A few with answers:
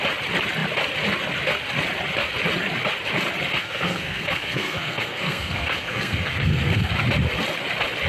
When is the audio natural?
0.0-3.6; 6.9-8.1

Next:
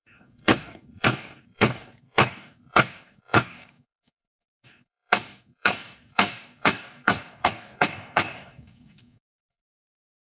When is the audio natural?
none

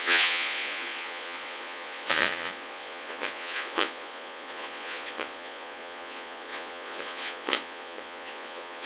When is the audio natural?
none

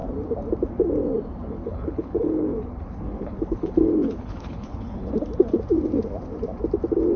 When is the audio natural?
0.0-1.6; 5.1-7.2

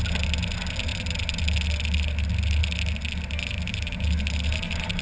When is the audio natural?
0.0-5.0

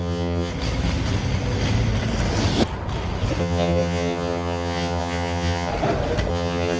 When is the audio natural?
0.5-3.4; 5.7-6.3